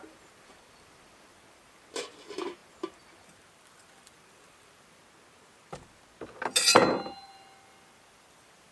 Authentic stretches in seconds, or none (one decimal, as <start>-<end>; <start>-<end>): 5.0-7.1